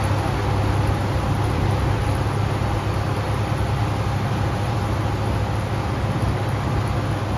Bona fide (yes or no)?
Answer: yes